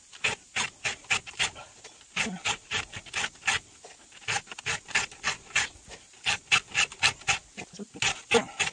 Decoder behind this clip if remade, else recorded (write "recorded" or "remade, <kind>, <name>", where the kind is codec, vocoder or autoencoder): recorded